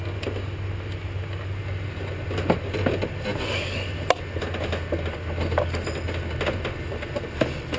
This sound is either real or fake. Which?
real